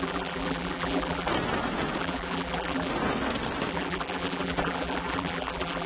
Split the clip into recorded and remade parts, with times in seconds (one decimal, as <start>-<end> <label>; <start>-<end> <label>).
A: 0.0-1.3 remade; 1.3-2.0 recorded; 2.0-2.9 remade; 2.9-3.7 recorded; 3.7-5.9 remade